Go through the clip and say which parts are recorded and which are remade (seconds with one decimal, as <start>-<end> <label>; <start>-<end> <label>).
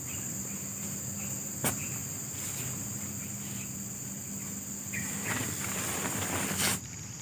0.0-2.0 recorded; 2.0-6.3 remade; 6.3-7.2 recorded